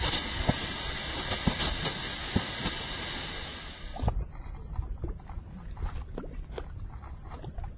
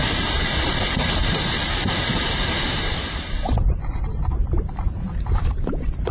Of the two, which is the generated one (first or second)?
second